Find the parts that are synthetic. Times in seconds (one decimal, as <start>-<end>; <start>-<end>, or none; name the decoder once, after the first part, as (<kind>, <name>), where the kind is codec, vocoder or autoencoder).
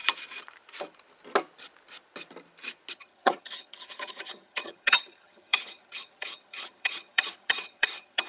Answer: 2.9-8.3 (vocoder, HiFi-GAN)